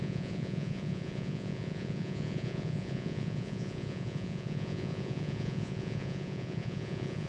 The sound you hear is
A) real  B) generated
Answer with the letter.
B